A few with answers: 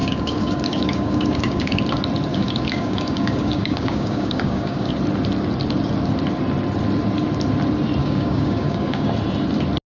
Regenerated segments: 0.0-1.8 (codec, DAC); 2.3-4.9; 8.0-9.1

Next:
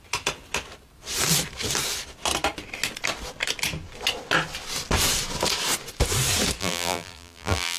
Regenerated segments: 6.6-7.8 (vocoder, BigVGAN v2)

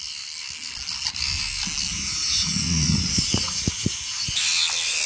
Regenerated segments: 1.9-4.4 (vocoder, Vocos)

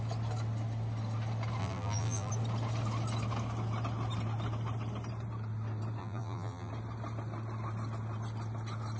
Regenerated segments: 1.6-2.3 (vocoder, BigVGAN v2); 6.0-6.7

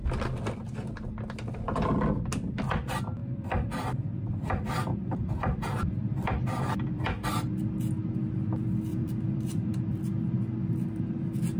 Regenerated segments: 3.2-7.5 (vocoder, BigVGAN v2); 8.9-9.8

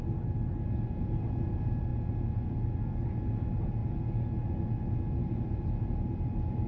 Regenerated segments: 5.2-6.1 (vocoder, BigVGAN v2)

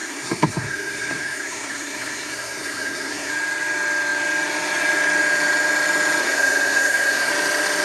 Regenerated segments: 0.0-3.3 (codec, SNAC); 6.2-7.3